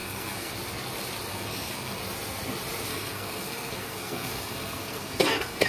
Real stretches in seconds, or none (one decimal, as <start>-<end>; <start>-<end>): 0.5-1.3; 2.0-2.9